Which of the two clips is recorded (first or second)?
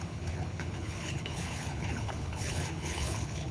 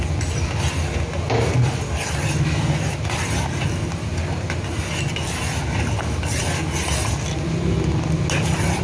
second